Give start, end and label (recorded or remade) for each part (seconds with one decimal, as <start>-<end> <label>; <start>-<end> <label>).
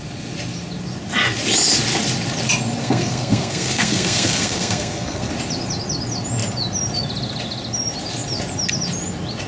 0.0-2.8 recorded; 2.8-5.3 remade; 5.3-9.5 recorded